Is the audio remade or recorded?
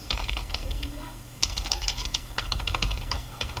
remade